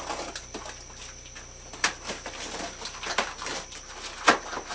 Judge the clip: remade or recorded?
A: recorded